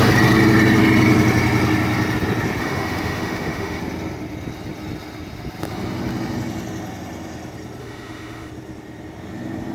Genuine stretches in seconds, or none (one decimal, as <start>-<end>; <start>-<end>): 0.0-2.6; 3.8-7.8; 8.5-9.7